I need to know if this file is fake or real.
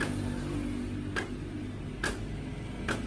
real